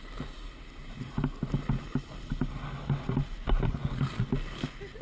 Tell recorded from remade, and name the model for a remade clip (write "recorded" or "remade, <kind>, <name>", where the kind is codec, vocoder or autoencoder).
recorded